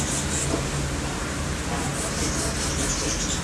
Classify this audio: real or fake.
real